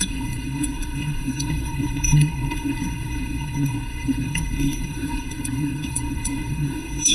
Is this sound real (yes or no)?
no